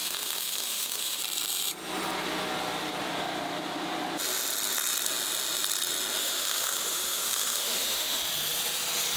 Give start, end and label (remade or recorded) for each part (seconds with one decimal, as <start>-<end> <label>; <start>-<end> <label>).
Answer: 0.0-1.2 remade; 1.2-6.2 recorded; 6.2-8.2 remade; 8.2-9.2 recorded